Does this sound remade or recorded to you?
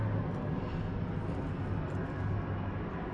recorded